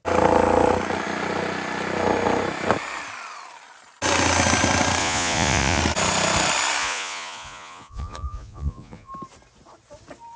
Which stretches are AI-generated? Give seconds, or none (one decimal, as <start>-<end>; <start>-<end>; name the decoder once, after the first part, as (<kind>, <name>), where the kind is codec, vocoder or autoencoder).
5.0-5.8 (vocoder, Vocos); 6.8-9.1